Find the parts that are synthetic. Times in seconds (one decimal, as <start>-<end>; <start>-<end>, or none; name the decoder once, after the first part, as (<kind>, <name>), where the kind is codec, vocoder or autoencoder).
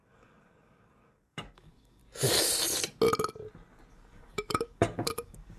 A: 0.0-2.0 (codec, DAC); 3.9-5.6